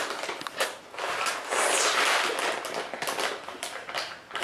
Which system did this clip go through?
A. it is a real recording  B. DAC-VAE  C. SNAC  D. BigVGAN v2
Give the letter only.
A